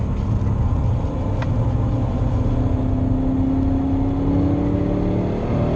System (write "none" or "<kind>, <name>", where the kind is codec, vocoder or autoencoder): none